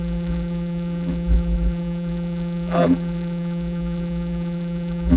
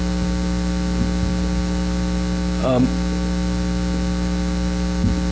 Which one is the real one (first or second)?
second